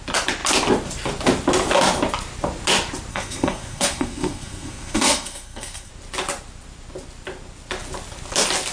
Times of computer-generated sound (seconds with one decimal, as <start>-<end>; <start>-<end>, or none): 3.1-5.9